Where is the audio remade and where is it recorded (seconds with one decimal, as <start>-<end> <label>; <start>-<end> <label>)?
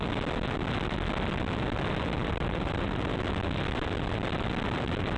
0.0-2.2 recorded; 2.2-3.1 remade; 3.1-5.2 recorded